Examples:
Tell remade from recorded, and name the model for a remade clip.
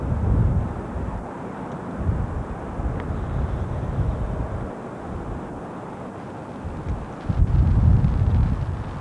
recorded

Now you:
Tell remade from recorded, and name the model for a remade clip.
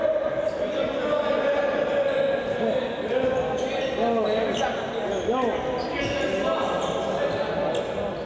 recorded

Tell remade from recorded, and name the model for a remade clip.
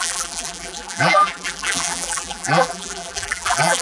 remade, vocoder, BigVGAN v2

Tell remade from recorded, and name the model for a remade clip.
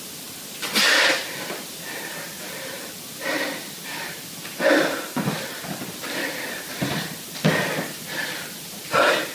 remade, vocoder, BigVGAN v2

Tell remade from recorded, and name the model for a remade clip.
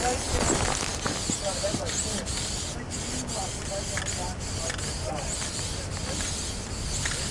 recorded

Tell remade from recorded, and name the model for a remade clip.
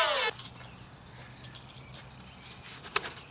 recorded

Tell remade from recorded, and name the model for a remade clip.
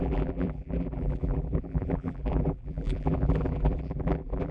remade, vocoder, BigVGAN v2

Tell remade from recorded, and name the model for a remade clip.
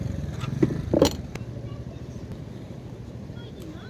recorded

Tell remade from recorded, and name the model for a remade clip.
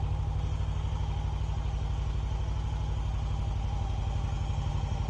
recorded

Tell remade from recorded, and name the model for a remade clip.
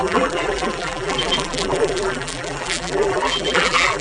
remade, vocoder, BigVGAN v2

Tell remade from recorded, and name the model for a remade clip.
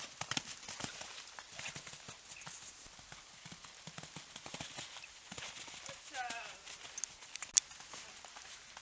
recorded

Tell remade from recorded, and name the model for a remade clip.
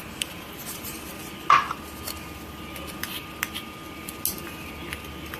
recorded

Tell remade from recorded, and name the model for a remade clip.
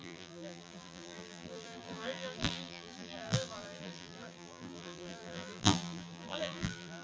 remade, vocoder, BigVGAN v2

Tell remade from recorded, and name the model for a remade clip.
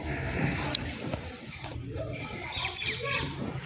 remade, vocoder, BigVGAN v2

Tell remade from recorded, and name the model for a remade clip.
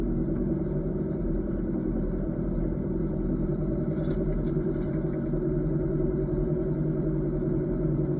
remade, vocoder, BigVGAN v2